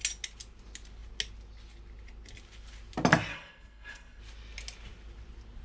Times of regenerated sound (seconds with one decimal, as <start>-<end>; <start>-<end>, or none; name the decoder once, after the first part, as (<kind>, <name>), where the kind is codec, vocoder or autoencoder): 3.3-4.2 (codec, SNAC)